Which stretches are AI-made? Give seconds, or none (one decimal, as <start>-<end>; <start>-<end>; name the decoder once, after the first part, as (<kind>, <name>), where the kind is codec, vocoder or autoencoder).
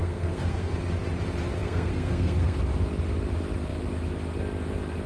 0.0-0.7 (codec, SNAC); 1.6-2.6